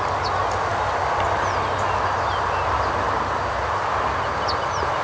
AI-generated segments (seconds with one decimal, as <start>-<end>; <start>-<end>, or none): none